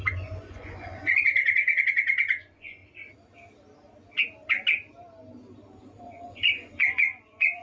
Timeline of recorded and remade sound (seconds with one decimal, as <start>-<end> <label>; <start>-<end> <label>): 0.0-2.8 remade; 2.8-6.0 recorded; 6.0-7.6 remade